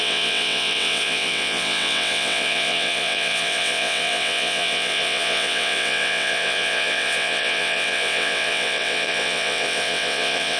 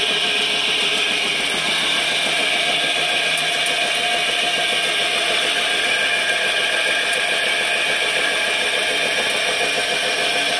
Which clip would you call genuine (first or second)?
second